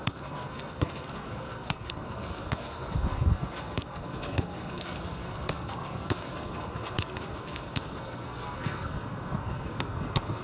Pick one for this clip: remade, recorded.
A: remade